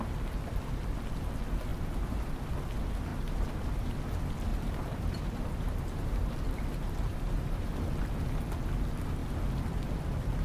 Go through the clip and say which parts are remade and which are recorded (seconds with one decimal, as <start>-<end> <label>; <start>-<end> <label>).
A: 0.0-1.7 recorded; 1.7-2.5 remade; 2.5-3.1 recorded; 3.1-4.0 remade; 4.0-4.5 recorded; 4.5-7.7 remade; 7.7-10.4 recorded